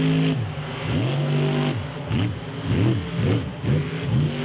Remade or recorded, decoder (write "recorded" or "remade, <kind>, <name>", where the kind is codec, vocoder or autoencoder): recorded